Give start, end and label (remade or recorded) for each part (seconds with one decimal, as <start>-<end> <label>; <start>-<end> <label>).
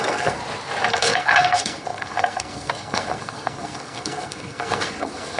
0.0-0.4 remade; 0.4-0.9 recorded; 0.9-5.4 remade